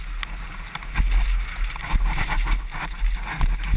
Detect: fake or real real